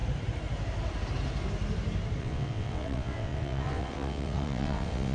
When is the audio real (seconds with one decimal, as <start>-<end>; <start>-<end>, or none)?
0.0-2.2